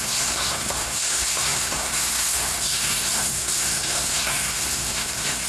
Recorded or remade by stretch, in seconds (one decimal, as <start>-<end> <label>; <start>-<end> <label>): 0.0-5.5 remade